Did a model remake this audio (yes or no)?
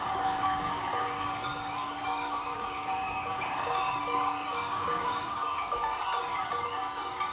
yes